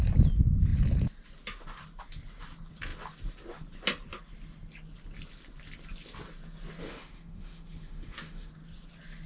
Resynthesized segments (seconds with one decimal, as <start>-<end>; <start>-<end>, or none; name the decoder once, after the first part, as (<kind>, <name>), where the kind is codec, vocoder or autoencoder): 6.8-8.5 (autoencoder, DAC-VAE)